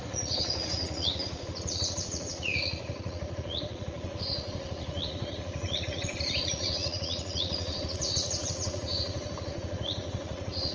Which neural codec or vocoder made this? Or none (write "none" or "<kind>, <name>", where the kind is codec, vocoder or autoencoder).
vocoder, Vocos